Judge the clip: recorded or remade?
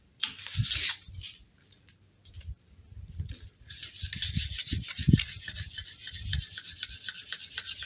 recorded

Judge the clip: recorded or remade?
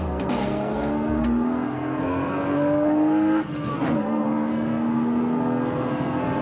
remade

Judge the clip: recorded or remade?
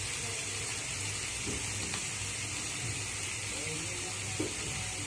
recorded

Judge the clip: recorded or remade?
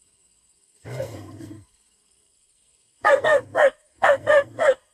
remade